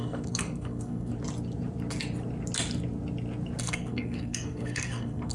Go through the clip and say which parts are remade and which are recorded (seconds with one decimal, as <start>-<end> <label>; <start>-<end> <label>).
0.0-1.1 remade; 1.1-3.6 recorded; 3.6-5.3 remade